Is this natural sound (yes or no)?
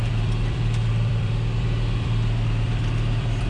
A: no